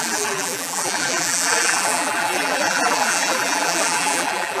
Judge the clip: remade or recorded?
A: remade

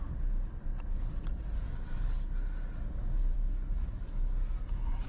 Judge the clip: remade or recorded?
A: recorded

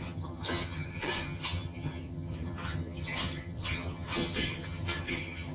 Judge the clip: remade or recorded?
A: remade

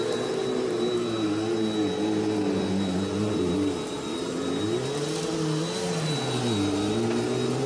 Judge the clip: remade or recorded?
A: recorded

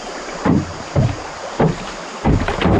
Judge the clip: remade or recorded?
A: recorded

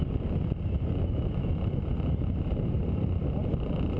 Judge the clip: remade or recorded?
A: recorded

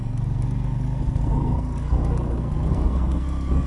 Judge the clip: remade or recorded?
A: remade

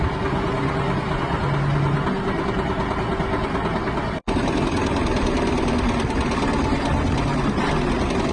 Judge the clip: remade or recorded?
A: recorded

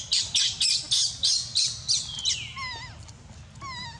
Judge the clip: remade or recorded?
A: recorded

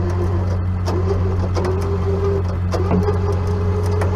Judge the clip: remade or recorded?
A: recorded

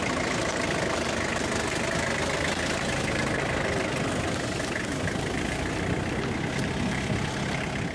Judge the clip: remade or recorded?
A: recorded